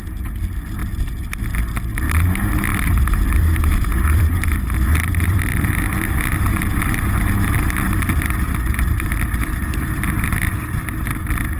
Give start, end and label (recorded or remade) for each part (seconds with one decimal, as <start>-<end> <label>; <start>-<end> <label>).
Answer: 0.0-0.8 recorded; 0.8-1.4 remade; 1.4-2.7 recorded; 2.7-4.4 remade; 4.4-5.1 recorded; 5.1-5.8 remade; 5.8-11.6 recorded